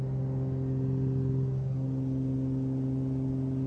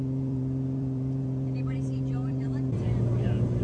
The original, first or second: first